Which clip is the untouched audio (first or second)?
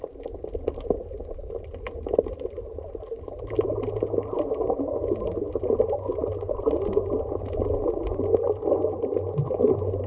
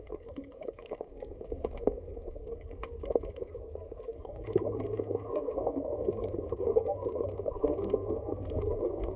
first